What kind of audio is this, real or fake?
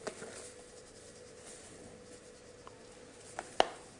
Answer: real